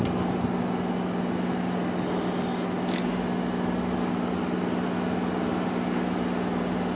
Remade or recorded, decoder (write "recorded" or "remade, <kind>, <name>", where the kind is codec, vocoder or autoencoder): recorded